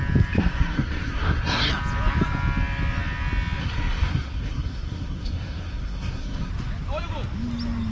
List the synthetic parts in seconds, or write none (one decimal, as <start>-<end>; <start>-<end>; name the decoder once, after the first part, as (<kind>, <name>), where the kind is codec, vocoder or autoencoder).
0.4-1.7 (codec, SNAC); 3.6-6.5